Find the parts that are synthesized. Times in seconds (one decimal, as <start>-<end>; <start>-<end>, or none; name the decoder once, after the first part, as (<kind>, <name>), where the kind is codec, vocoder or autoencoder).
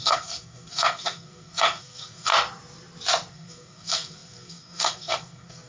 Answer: 0.0-2.3 (codec, SNAC); 3.3-5.7